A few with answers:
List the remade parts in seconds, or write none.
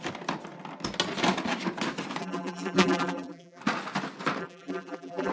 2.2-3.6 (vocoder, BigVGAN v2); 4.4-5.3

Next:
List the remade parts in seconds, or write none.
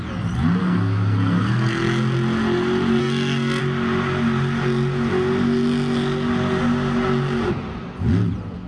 0.6-1.7 (codec, SNAC); 3.0-3.6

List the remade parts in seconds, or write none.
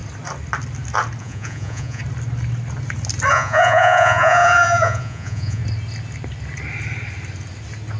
1.2-2.0 (vocoder, Vocos); 3.3-5.6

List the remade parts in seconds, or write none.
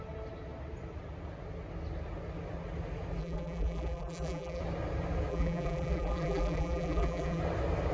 3.2-4.6 (vocoder, BigVGAN v2); 5.3-7.4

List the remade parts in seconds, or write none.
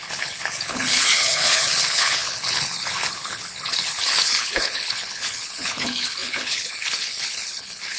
0.0-8.0 (codec, HILCodec)